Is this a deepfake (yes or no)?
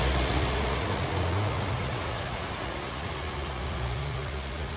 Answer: yes